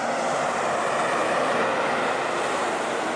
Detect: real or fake real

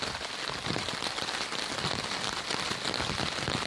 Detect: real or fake real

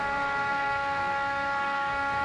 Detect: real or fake fake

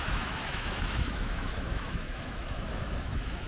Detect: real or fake fake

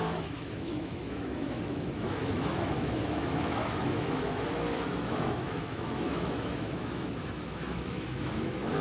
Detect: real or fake fake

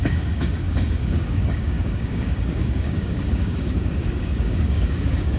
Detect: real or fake fake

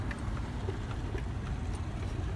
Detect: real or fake real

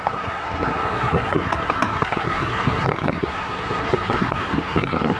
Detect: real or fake fake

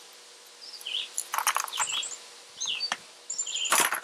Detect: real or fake real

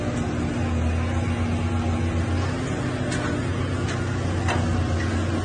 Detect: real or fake real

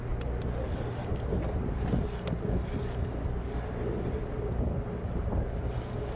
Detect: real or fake real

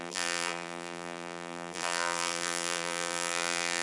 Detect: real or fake fake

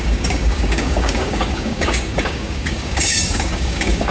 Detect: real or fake fake